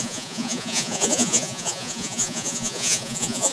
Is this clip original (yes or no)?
no